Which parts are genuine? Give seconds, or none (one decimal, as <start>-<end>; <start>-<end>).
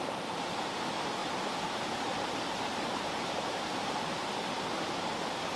0.0-5.6